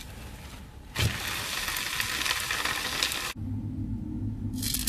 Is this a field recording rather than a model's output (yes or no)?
yes